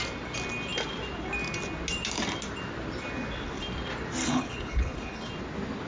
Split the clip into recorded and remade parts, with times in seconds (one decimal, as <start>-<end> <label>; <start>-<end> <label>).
0.0-4.2 recorded; 4.2-5.3 remade; 5.3-5.9 recorded